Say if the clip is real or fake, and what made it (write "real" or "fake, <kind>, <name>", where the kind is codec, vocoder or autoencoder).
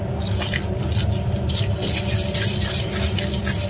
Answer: real